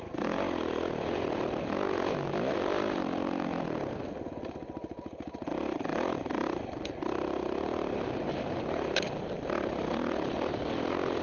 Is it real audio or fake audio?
real